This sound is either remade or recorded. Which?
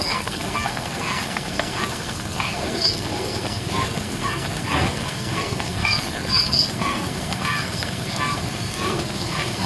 remade